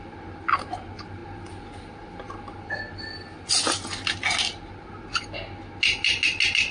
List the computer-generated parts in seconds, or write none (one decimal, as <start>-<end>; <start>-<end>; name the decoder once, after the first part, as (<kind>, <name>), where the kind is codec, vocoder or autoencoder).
none